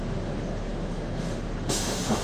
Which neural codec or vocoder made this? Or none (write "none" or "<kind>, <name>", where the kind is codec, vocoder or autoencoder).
autoencoder, DAC-VAE